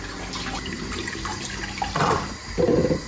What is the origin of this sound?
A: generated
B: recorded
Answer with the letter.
B